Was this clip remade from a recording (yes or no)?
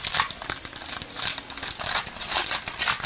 no